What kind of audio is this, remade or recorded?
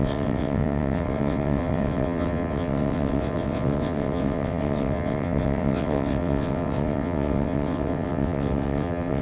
remade